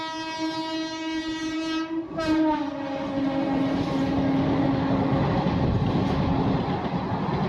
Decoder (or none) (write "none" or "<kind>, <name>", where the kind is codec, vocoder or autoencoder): none